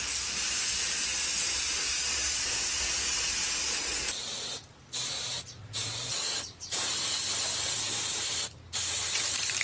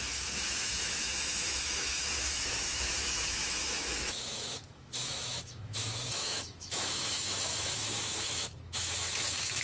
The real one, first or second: first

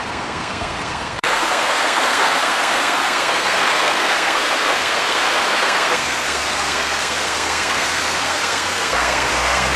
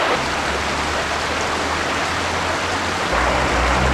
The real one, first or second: second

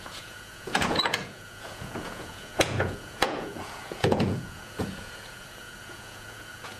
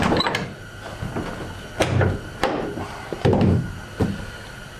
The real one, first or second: second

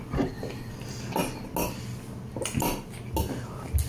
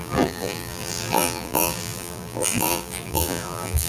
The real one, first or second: first